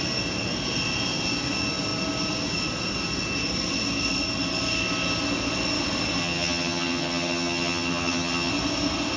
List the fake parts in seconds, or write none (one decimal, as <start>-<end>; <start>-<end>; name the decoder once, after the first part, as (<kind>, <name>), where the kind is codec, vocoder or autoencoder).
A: 6.2-8.5 (vocoder, HiFi-GAN)